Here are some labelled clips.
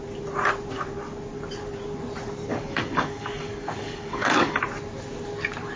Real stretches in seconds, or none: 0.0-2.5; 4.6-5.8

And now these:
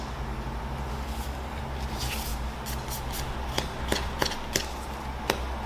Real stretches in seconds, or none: 0.0-0.9; 1.6-5.7

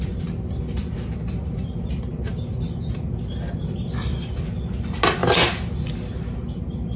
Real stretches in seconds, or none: 0.0-7.0